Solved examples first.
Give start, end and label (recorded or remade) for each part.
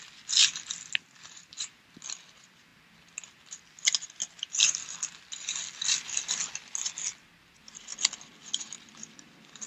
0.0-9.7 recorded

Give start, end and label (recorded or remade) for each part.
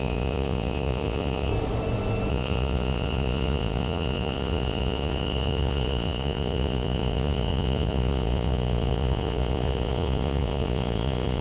0.0-1.5 remade; 1.5-2.3 recorded; 2.3-11.4 remade